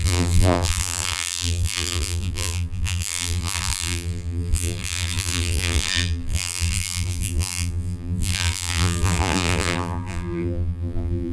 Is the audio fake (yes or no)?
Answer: yes